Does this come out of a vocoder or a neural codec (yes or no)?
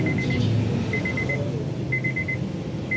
no